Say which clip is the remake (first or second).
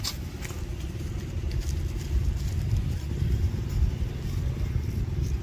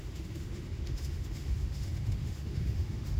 second